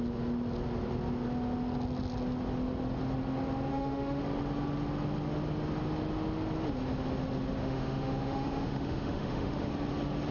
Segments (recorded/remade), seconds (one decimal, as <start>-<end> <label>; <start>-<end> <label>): 0.0-3.7 recorded; 3.7-4.2 remade; 4.2-7.6 recorded; 7.6-9.7 remade; 9.7-10.3 recorded